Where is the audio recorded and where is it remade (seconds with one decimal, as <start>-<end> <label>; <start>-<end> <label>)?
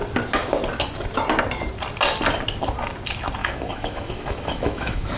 0.0-3.4 recorded; 3.4-5.2 remade